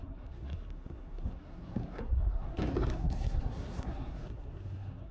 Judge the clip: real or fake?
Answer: fake